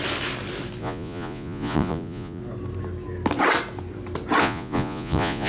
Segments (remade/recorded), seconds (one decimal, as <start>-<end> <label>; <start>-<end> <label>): 0.0-0.8 recorded; 0.8-2.4 remade; 2.4-4.4 recorded; 4.4-5.5 remade